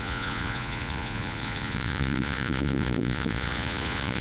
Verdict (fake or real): fake